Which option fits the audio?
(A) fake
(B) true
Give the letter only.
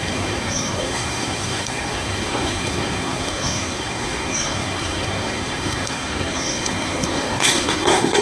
A